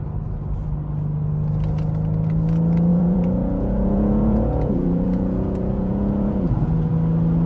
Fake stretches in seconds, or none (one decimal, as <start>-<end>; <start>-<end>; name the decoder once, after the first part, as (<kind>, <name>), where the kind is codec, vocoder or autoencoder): 2.9-6.9 (vocoder, Vocos)

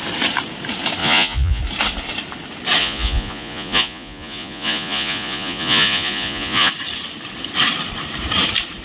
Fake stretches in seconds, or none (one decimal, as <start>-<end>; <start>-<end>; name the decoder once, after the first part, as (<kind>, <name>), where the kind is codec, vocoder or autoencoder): 1.0-1.6 (vocoder, Vocos); 2.8-6.7